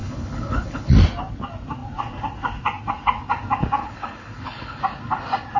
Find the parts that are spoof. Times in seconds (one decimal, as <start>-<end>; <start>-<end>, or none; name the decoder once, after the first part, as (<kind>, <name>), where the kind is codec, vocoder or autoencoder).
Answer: 0.0-0.9 (codec, HILCodec); 3.8-4.8